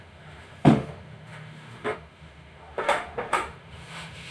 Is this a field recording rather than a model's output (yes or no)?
no